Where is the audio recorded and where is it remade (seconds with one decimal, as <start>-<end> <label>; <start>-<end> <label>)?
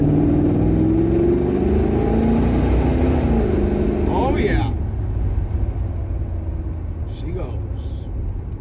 0.0-8.6 recorded